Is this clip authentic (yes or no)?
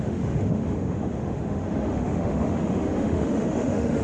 no